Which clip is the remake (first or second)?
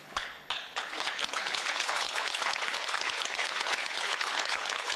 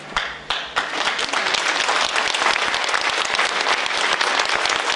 first